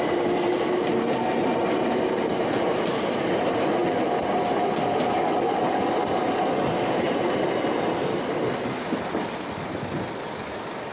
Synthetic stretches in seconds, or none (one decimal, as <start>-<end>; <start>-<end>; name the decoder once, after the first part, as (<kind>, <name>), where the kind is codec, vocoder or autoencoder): none